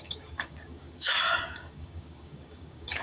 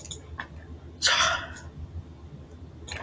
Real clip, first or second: second